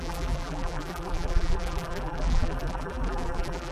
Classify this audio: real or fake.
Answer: fake